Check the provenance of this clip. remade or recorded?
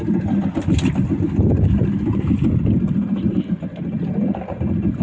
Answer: recorded